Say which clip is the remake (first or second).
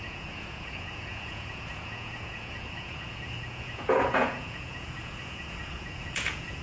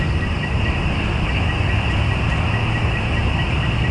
first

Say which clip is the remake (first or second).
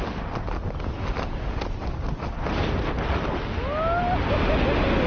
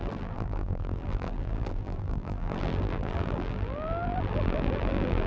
second